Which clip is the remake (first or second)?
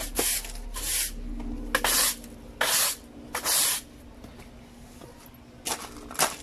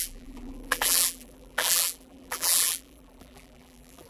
second